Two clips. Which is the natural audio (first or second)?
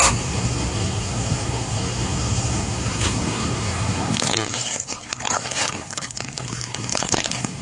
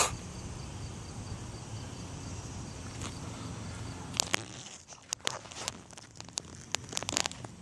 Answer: second